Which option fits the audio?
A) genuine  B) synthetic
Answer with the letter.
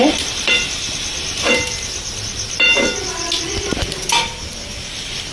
B